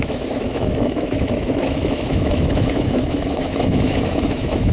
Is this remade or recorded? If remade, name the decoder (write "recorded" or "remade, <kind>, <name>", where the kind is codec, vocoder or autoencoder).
remade, autoencoder, DAC-VAE